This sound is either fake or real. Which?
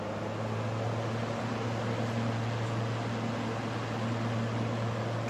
real